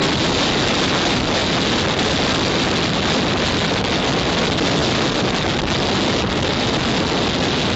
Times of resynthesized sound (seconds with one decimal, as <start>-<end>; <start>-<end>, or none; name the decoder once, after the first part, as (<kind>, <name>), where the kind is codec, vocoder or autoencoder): none